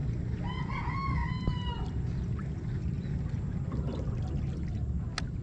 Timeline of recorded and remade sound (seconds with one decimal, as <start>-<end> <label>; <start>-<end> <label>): 0.0-5.4 recorded